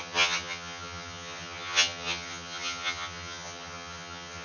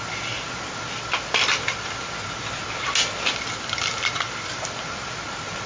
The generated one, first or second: first